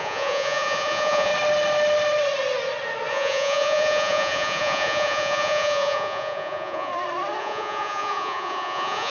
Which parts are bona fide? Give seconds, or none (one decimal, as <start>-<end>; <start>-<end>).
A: 1.3-3.1; 6.9-7.4